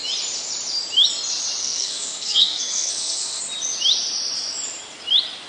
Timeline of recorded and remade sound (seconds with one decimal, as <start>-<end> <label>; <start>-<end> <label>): 0.0-1.6 recorded; 1.6-3.4 remade; 3.4-5.5 recorded